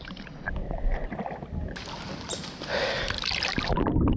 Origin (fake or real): real